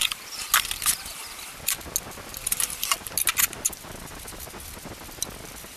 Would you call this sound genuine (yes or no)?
yes